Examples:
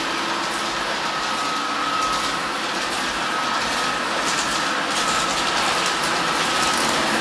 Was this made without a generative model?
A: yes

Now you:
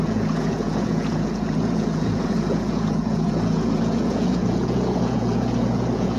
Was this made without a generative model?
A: no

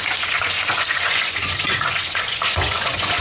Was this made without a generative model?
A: no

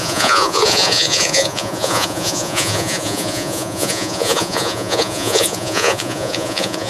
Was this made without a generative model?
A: no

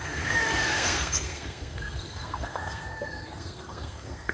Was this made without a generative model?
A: no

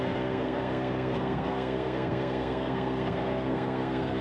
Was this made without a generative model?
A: no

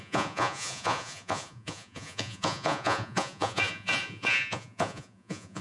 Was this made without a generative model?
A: no